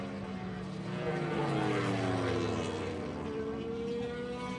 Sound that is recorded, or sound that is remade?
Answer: recorded